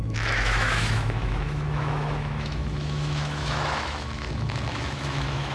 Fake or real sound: fake